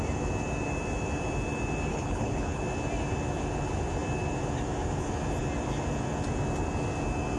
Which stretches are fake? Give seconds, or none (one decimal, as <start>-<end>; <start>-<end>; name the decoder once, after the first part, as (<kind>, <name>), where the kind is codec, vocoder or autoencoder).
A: 1.9-2.6 (codec, HILCodec)